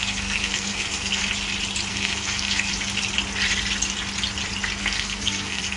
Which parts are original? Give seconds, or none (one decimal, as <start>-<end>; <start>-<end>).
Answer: 1.2-1.9; 2.7-4.8

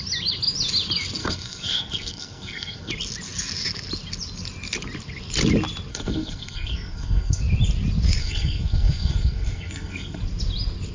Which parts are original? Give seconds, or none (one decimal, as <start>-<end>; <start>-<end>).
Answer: 0.0-1.2; 2.9-5.9; 7.4-8.2; 10.2-10.9